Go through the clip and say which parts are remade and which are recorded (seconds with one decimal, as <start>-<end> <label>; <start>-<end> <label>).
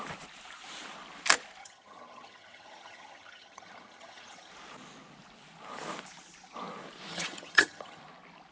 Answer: 0.0-1.6 recorded; 1.6-4.5 remade; 4.5-7.1 recorded; 7.1-8.0 remade; 8.0-8.5 recorded